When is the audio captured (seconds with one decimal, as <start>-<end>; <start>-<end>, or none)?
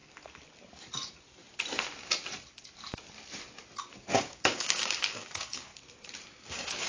0.0-4.1; 5.7-6.3